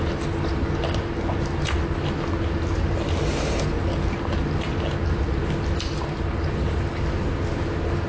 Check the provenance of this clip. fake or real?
real